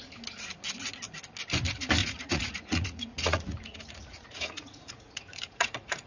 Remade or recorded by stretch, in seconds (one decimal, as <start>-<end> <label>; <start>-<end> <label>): 0.0-2.0 recorded; 2.0-6.1 remade